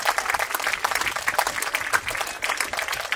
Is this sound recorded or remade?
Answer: recorded